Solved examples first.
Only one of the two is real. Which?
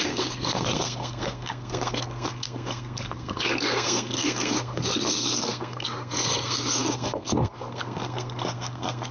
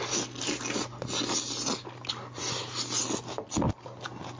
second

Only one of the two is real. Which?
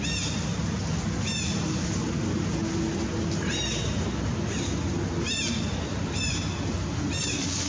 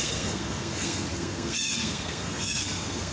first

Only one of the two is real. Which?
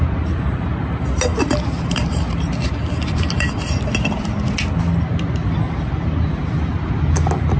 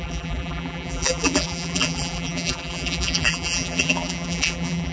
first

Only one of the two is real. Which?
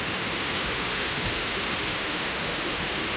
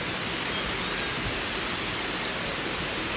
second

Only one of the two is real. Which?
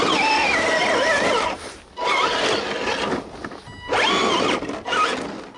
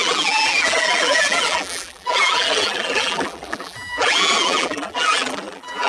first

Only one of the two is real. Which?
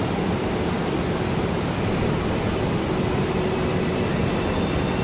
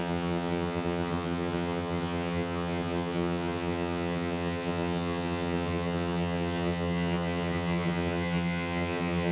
first